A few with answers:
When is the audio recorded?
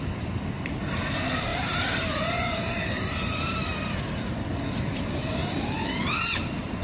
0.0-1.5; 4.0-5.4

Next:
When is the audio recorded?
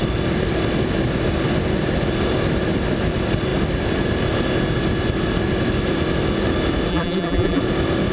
0.0-6.9; 7.6-8.1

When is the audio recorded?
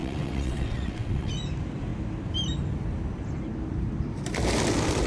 1.3-5.1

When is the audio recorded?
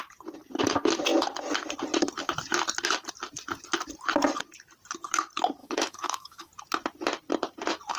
0.0-5.6; 6.5-8.0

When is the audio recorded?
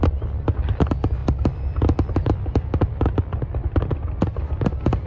0.0-5.1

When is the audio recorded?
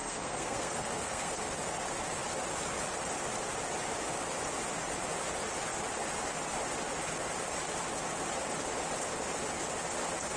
1.3-10.4